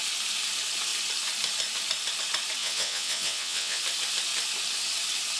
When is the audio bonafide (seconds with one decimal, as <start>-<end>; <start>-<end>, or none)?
0.0-2.6; 3.8-5.4